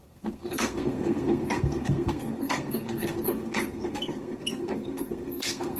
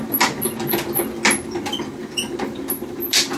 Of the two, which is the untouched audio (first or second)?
second